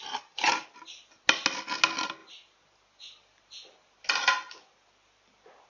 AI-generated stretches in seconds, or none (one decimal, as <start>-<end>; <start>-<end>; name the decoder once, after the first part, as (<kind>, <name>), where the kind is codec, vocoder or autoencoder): none